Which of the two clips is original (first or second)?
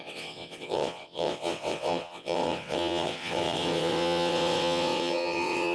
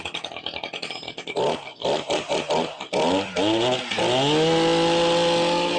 second